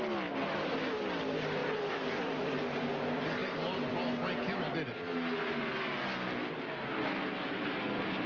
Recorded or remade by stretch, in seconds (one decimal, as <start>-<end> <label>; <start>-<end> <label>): 0.0-1.6 recorded; 1.6-3.0 remade; 3.0-8.3 recorded